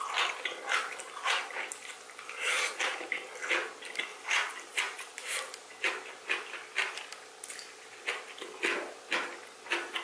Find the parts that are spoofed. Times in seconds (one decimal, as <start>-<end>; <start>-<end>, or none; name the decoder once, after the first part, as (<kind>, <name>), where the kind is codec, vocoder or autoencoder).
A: 4.1-5.1 (vocoder, BigVGAN v2)